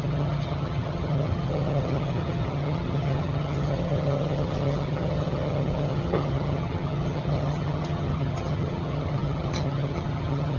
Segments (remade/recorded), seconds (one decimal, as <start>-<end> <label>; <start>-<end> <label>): 0.0-10.6 remade